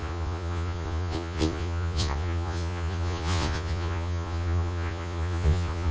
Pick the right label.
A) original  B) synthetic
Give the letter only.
B